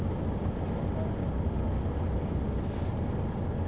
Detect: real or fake real